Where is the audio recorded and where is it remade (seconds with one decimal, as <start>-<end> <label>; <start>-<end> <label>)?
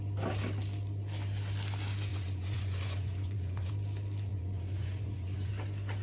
0.0-2.1 recorded; 2.1-3.7 remade; 3.7-4.3 recorded; 4.3-5.5 remade; 5.5-6.0 recorded